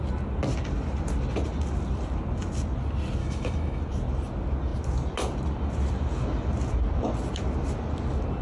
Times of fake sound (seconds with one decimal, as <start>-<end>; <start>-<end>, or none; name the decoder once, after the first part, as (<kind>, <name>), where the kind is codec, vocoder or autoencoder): 3.2-3.8 (autoencoder, DAC-VAE)